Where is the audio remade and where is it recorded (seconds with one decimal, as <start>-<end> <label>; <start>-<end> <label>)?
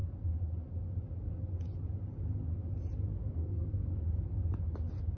0.0-3.2 recorded; 3.2-3.9 remade; 3.9-5.2 recorded